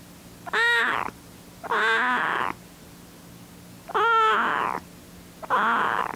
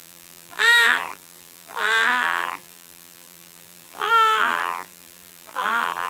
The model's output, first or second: second